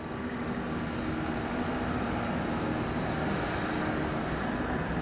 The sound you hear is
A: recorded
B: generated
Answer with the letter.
A